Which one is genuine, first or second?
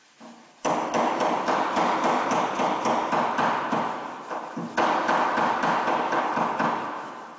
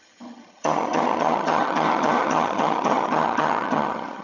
first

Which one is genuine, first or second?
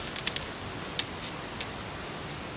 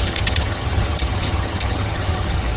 first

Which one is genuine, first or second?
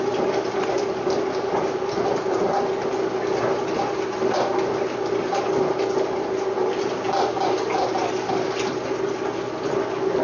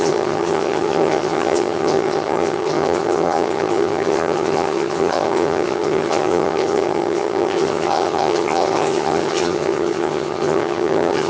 first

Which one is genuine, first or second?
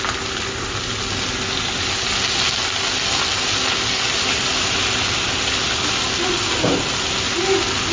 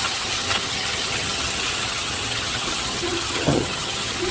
first